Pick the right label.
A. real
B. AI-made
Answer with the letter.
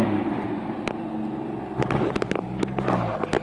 A